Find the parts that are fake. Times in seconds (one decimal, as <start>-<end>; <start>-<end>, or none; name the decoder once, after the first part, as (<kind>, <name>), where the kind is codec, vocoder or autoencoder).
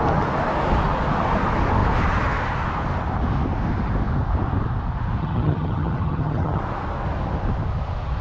5.2-6.6 (vocoder, HiFi-GAN)